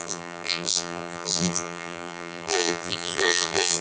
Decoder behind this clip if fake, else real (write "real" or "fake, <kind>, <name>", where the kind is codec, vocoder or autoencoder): fake, vocoder, BigVGAN v2